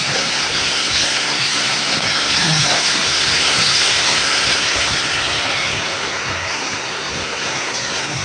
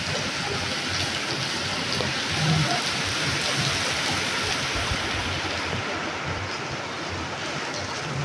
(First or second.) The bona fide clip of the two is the second